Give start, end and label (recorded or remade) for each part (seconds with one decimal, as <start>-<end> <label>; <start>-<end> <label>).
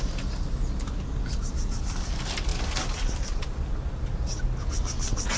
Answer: 0.0-5.4 recorded